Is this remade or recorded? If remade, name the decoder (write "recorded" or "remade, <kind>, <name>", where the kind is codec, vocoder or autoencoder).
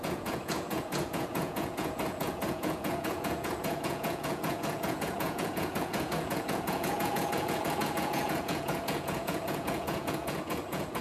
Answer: remade, vocoder, Vocos